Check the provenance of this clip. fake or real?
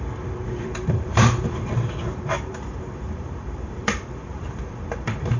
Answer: fake